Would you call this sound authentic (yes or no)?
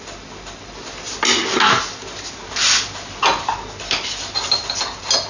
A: yes